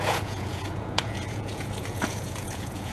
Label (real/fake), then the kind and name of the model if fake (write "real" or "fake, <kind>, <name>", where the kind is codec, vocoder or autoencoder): fake, vocoder, Vocos